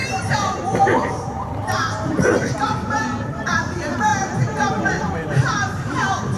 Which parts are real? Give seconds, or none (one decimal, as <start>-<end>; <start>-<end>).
none